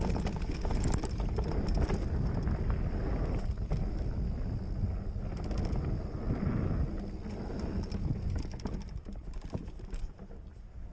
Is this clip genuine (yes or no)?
yes